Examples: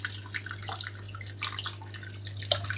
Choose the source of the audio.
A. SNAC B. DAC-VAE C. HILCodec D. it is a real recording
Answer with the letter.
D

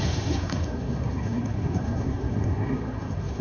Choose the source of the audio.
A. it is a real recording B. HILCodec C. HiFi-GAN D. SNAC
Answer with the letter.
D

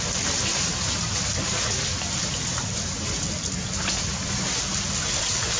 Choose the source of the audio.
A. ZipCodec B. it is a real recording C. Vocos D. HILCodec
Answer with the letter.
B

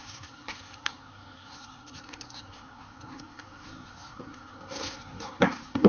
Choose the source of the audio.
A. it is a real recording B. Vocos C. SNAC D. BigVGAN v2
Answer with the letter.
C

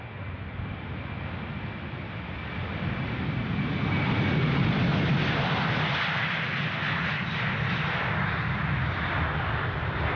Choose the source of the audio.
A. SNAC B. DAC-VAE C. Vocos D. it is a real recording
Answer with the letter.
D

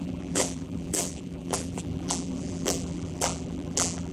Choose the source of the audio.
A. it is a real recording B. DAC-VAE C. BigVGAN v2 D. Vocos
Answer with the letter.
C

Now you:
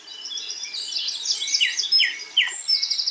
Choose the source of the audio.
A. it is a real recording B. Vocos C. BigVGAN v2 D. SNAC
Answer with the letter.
A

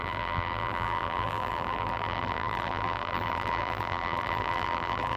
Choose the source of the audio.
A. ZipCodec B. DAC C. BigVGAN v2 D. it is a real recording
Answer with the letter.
C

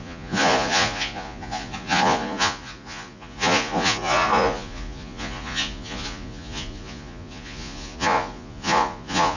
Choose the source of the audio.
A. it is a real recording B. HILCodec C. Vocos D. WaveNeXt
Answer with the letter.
C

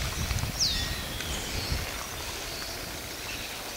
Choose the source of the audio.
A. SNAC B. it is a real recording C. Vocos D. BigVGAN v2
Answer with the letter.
B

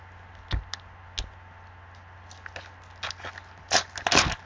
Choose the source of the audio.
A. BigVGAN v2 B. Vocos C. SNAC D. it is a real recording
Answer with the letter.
D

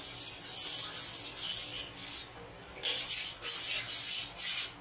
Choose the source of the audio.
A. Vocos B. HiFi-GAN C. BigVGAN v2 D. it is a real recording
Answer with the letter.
D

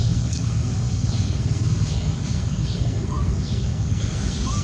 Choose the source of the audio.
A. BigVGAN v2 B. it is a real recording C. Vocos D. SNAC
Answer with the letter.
D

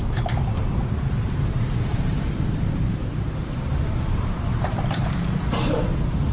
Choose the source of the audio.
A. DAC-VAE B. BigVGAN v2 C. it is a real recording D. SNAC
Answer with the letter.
B